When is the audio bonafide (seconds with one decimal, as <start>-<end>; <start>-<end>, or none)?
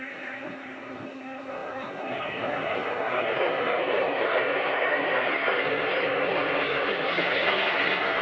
none